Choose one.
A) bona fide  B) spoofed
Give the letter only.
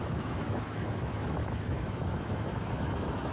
B